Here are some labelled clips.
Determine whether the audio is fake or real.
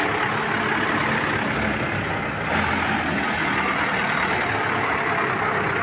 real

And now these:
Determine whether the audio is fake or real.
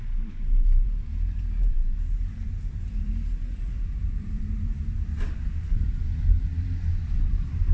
fake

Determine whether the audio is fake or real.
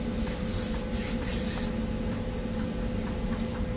real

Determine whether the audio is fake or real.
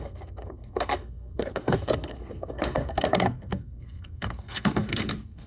fake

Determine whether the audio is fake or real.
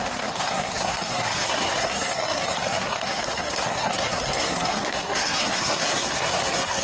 fake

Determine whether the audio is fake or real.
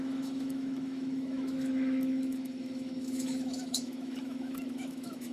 fake